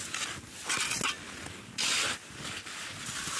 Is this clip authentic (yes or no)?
yes